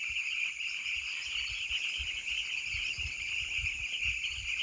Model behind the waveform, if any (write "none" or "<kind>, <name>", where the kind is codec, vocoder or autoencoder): none